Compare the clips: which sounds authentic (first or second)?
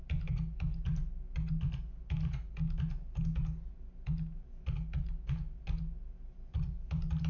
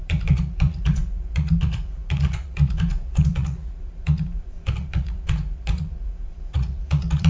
first